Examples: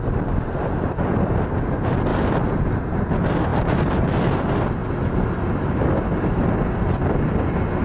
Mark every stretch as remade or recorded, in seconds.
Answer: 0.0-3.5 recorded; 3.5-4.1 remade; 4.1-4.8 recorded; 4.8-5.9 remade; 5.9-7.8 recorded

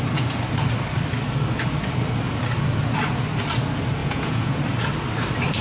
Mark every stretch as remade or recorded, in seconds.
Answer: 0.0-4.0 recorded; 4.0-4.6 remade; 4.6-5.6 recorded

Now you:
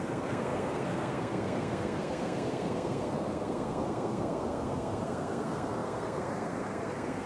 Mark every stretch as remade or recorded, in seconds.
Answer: 0.0-7.3 remade